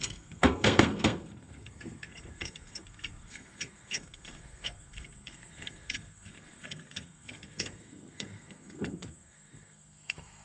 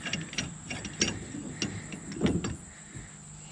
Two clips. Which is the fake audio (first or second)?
first